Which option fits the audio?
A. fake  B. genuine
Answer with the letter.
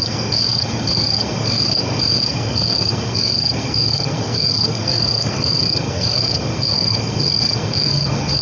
A